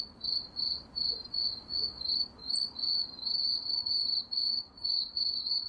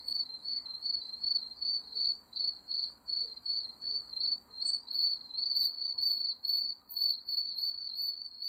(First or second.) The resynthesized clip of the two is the second